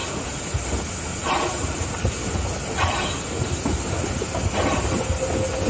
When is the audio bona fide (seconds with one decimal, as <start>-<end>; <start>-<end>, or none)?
0.0-5.7